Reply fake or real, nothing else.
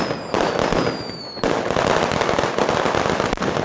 real